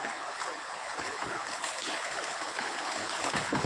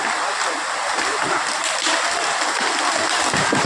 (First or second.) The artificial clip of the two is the first